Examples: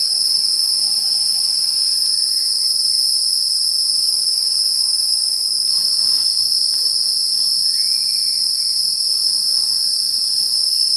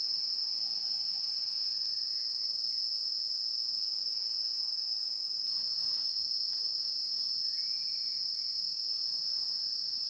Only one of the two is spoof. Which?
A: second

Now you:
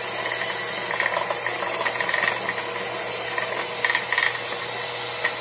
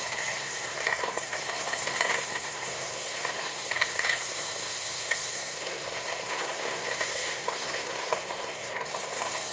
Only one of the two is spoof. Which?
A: second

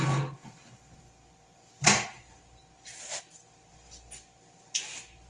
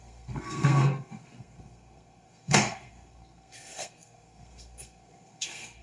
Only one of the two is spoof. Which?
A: second